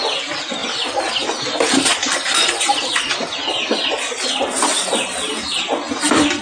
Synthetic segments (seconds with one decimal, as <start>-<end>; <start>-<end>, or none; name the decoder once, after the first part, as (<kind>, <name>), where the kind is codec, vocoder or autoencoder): 1.9-3.3 (vocoder, BigVGAN v2)